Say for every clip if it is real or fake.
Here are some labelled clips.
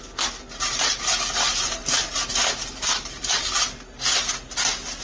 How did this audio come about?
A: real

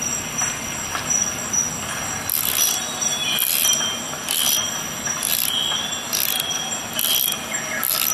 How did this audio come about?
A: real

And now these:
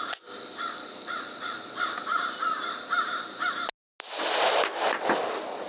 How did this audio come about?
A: real